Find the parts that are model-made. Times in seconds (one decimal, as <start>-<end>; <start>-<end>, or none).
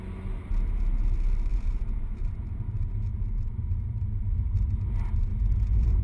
1.5-2.2; 3.1-4.3; 5.3-6.0